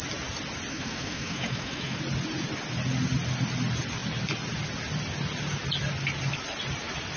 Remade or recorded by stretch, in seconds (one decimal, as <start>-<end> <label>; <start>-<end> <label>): 0.0-0.7 recorded; 0.7-2.0 remade; 2.0-7.2 recorded